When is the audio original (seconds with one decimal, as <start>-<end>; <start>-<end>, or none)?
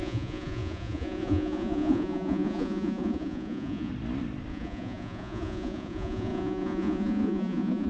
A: 3.9-4.5